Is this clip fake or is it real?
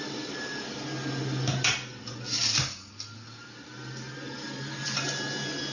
real